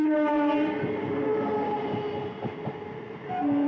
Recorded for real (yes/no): yes